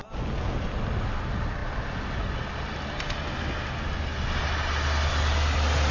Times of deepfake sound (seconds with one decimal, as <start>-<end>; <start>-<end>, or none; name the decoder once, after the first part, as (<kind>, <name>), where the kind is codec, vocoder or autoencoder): none